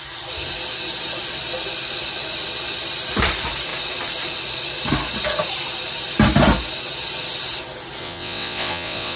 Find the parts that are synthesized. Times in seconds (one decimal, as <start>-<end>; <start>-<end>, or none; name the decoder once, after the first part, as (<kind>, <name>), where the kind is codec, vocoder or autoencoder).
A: 8.0-9.2 (vocoder, WaveNeXt)